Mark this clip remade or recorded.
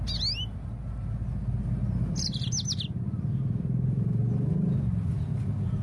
recorded